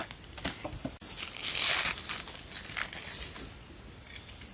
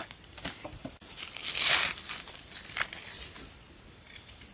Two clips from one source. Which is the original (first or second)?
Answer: first